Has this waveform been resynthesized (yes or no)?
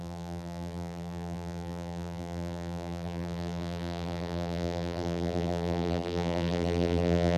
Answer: yes